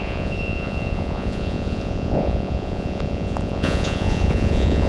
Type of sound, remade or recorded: remade